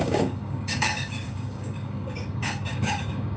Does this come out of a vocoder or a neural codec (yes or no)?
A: yes